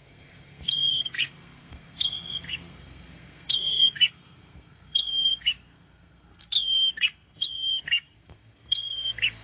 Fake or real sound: fake